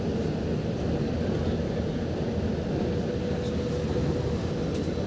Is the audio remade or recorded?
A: recorded